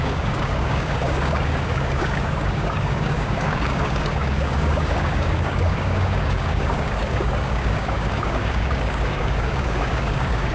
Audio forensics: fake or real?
fake